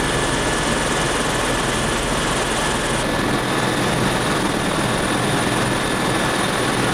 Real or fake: real